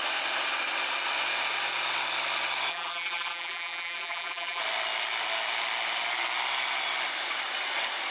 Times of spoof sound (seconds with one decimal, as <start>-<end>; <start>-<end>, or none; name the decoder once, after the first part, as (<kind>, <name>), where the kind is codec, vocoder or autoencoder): 2.7-4.6 (vocoder, BigVGAN v2)